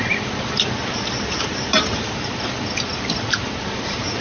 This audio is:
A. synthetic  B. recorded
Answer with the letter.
B